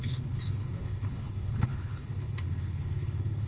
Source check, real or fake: fake